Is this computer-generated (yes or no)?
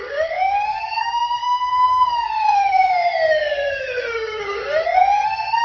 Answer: yes